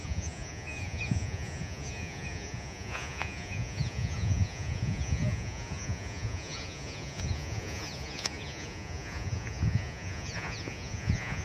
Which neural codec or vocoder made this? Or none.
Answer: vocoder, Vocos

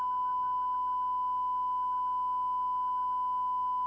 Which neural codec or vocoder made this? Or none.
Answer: none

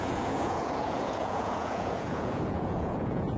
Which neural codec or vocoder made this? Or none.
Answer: vocoder, Vocos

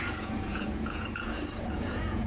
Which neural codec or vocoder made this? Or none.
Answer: vocoder, Vocos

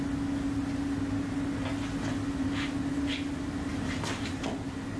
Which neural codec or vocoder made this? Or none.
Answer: none